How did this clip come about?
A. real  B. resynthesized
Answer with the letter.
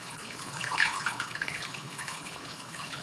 B